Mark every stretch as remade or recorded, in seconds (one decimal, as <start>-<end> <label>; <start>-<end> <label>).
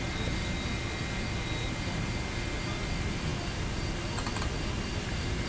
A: 0.0-5.5 recorded